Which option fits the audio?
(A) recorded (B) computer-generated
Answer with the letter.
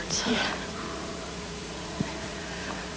B